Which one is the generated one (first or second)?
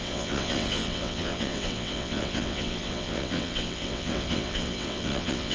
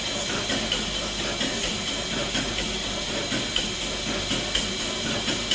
first